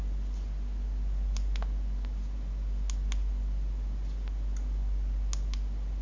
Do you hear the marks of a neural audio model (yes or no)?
no